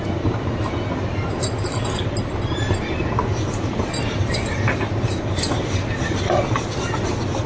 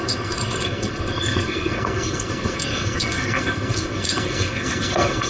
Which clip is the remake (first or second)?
second